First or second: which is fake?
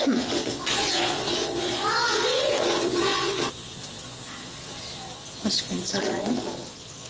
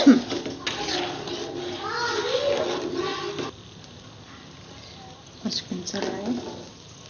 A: first